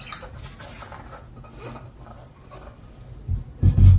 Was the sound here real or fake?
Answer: real